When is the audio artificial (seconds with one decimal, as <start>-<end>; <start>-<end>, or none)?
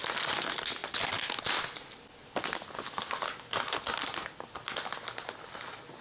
none